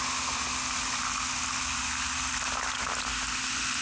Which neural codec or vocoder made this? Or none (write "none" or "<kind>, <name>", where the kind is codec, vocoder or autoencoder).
none